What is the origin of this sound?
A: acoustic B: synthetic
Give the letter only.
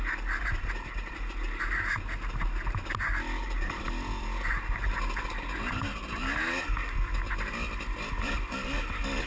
A